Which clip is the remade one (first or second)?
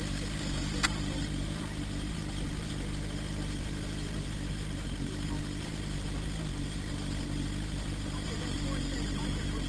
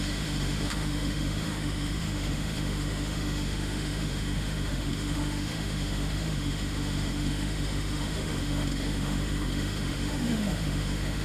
second